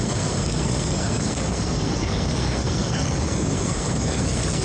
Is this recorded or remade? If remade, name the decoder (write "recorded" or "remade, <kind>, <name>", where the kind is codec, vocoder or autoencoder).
remade, codec, SNAC